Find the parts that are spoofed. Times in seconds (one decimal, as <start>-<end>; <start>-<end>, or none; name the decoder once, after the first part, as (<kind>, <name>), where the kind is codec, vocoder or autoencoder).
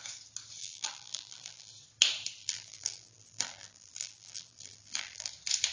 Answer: 0.6-1.7 (vocoder, BigVGAN v2); 2.4-5.3